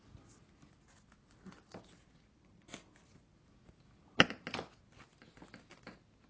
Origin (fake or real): real